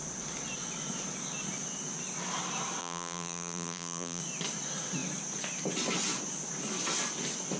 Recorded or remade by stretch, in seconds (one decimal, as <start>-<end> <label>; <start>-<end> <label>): 0.0-2.8 recorded; 2.8-4.2 remade; 4.2-7.6 recorded